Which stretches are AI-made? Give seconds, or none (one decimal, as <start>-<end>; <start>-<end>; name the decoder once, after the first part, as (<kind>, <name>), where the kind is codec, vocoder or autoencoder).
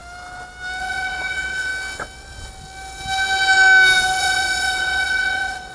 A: 0.8-1.7 (vocoder, Vocos); 4.2-5.7